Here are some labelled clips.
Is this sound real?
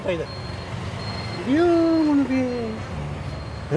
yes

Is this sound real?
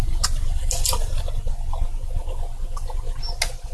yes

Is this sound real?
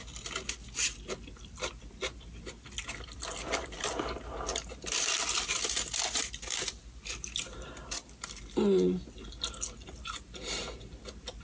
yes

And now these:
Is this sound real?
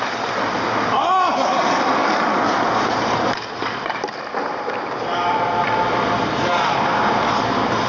yes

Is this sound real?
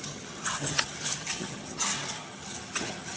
no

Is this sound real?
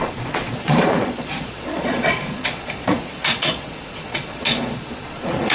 no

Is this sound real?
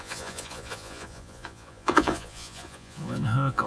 no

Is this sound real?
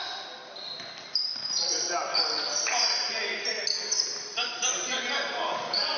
yes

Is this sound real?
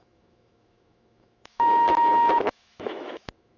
no